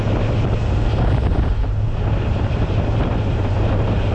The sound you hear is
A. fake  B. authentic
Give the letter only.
A